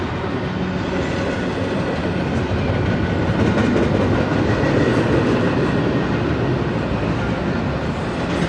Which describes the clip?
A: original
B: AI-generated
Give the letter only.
A